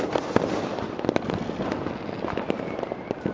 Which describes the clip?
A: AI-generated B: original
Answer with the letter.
B